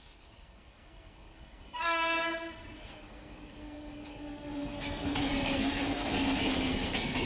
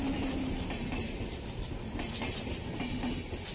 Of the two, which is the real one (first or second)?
second